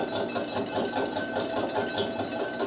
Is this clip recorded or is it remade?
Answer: recorded